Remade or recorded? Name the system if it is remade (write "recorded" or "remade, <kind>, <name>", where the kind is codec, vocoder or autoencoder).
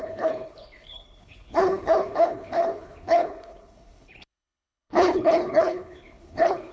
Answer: remade, codec, HILCodec